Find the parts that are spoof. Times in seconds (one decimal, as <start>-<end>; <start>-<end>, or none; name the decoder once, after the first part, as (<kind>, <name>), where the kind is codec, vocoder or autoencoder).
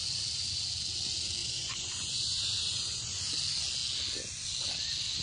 1.4-3.3 (vocoder, Vocos)